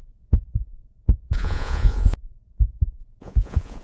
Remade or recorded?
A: remade